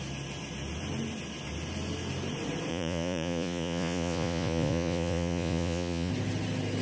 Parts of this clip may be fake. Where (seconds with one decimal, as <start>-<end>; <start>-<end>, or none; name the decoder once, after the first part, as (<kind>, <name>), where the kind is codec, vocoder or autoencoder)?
2.7-6.1 (vocoder, Vocos)